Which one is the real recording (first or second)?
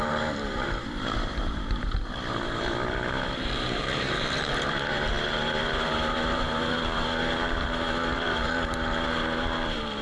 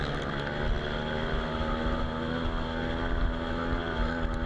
second